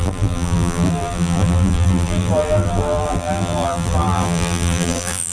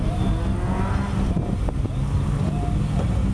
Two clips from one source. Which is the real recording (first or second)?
second